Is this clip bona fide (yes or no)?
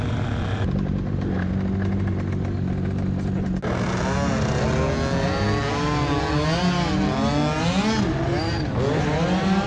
yes